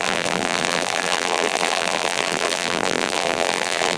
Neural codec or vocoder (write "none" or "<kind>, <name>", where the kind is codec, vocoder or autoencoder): vocoder, BigVGAN v2